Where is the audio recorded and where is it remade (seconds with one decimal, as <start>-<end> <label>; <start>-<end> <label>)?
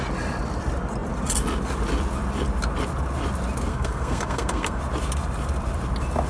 0.0-3.7 recorded; 3.7-4.8 remade; 4.8-6.3 recorded